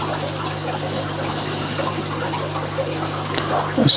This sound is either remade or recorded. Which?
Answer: recorded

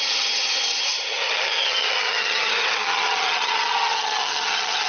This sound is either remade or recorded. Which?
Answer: remade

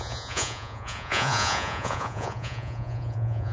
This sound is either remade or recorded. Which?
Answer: remade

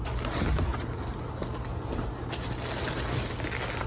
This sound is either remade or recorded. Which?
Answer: recorded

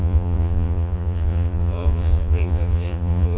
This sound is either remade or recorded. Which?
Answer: remade